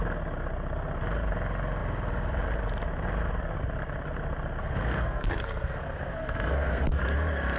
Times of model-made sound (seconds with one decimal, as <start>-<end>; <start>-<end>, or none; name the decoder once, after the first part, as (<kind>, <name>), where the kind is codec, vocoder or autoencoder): 4.6-7.0 (codec, SNAC)